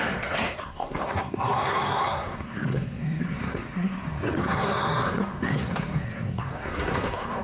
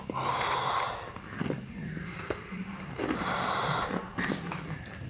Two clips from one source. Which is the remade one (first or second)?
first